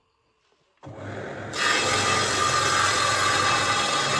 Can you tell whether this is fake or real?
real